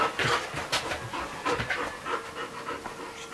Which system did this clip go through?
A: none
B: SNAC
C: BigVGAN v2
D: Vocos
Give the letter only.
A